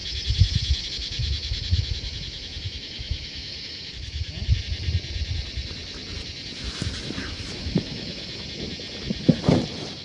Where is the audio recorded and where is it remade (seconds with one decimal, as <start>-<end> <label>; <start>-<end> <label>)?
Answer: 0.0-4.6 remade; 4.6-7.2 recorded; 7.2-8.4 remade; 8.4-10.0 recorded

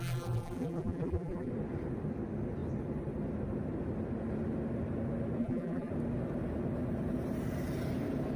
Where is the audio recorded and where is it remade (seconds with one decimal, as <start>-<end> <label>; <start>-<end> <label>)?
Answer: 0.0-1.5 remade; 1.5-5.4 recorded; 5.4-5.9 remade; 5.9-8.4 recorded

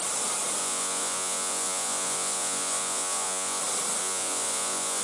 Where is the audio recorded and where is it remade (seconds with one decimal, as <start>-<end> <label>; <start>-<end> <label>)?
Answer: 0.0-0.6 recorded; 0.6-3.6 remade; 3.6-4.0 recorded; 4.0-5.0 remade

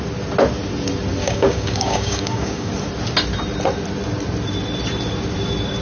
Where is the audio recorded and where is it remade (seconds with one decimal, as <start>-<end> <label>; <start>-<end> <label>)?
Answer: 0.0-1.2 recorded; 1.2-2.7 remade; 2.7-5.8 recorded

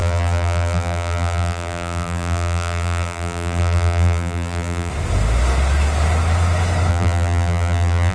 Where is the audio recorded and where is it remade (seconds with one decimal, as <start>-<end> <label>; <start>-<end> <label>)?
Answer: 0.0-4.9 remade; 4.9-6.9 recorded; 6.9-8.1 remade